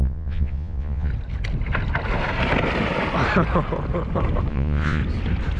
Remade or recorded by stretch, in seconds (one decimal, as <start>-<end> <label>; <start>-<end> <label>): 0.0-1.1 remade; 1.1-4.5 recorded; 4.5-5.0 remade; 5.0-5.6 recorded